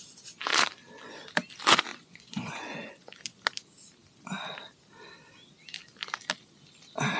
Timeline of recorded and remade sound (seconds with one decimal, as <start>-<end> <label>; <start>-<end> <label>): 0.0-1.9 recorded; 1.9-3.2 remade; 3.2-7.2 recorded